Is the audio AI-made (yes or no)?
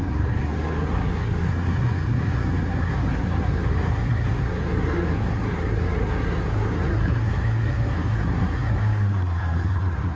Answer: yes